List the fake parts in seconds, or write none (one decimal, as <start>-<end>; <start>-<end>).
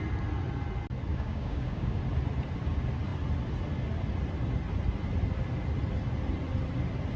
1.1-2.0